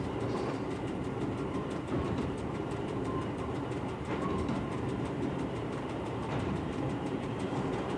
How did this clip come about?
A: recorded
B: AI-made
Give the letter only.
B